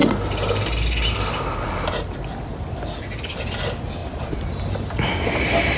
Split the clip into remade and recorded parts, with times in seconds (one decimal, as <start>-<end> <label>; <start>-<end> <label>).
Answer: 0.0-5.8 recorded